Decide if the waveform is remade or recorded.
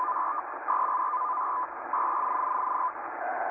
recorded